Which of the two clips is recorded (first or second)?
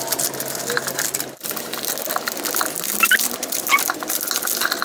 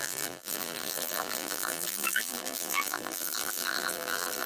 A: first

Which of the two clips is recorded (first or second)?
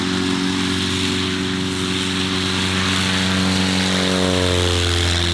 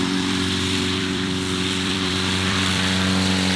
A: first